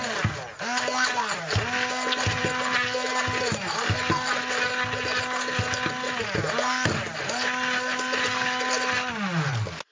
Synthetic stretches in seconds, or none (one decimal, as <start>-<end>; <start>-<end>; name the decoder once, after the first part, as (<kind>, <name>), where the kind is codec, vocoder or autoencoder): none